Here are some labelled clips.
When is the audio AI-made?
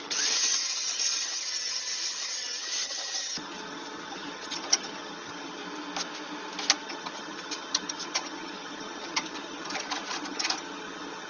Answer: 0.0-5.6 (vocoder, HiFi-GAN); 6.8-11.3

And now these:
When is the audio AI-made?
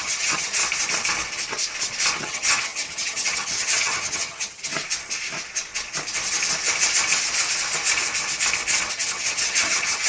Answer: 0.0-0.6 (vocoder, HiFi-GAN); 2.2-4.7; 8.9-10.1